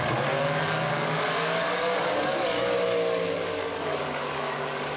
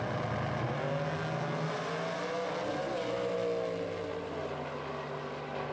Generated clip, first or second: first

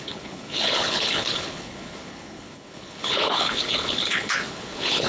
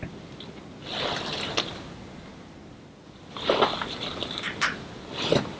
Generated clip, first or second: first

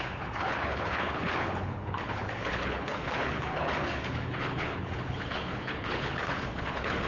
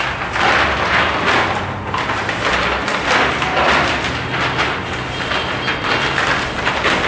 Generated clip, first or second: first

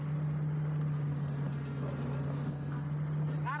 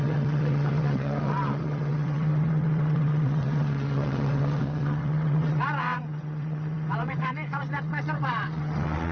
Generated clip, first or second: second